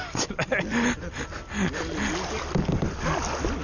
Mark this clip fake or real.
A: real